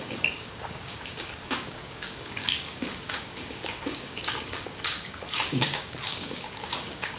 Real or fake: fake